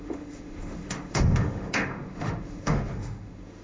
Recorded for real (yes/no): no